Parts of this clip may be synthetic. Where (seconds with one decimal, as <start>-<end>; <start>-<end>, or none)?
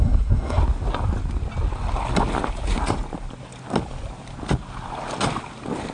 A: 0.0-0.6